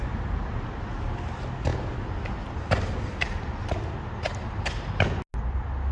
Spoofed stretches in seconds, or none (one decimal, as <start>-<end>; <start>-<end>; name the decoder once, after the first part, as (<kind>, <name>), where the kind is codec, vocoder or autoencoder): none